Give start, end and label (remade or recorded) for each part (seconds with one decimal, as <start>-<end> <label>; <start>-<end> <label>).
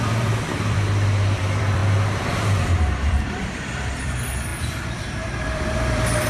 0.0-1.8 remade; 1.8-3.1 recorded; 3.1-6.3 remade